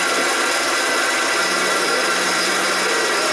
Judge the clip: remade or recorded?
remade